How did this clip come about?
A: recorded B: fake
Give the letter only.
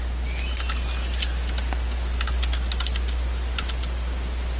A